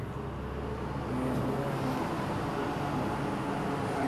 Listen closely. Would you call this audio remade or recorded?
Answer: recorded